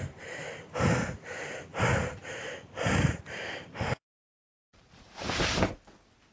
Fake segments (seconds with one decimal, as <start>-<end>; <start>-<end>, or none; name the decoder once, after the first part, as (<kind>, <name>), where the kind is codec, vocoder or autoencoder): 1.7-5.4 (vocoder, BigVGAN v2)